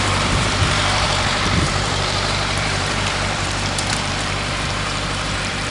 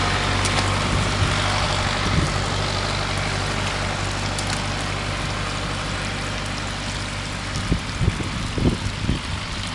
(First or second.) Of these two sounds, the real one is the second